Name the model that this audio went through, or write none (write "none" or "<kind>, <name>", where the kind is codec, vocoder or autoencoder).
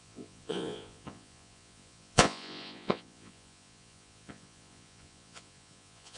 vocoder, Vocos